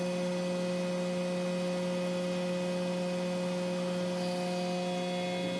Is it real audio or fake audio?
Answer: real